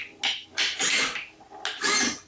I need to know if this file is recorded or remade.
recorded